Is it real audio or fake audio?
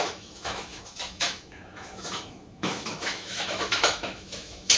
fake